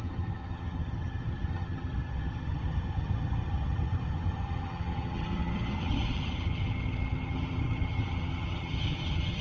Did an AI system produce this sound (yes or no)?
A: yes